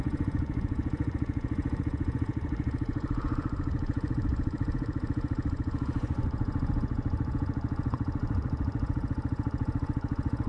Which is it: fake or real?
fake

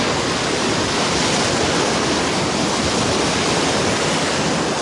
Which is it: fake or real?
real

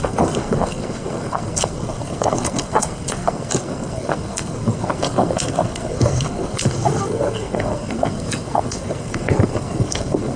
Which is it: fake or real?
fake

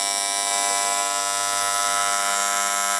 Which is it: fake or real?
fake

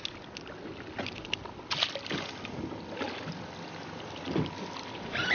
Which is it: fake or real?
real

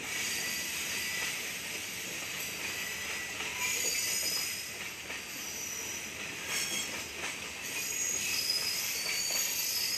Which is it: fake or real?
real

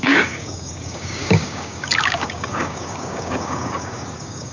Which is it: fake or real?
fake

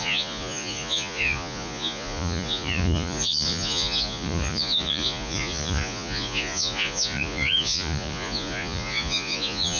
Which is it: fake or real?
fake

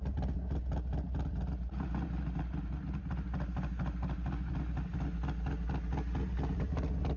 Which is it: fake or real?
real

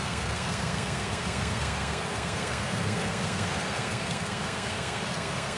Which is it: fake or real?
fake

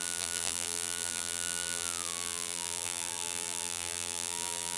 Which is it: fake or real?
fake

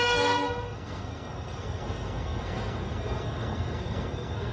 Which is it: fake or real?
fake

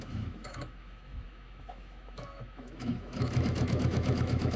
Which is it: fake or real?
fake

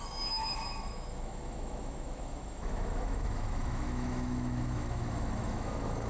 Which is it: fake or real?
fake